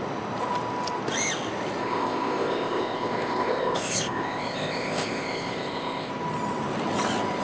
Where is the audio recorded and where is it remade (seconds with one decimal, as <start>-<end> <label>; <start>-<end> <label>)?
0.0-1.8 recorded; 1.8-6.1 remade; 6.1-7.4 recorded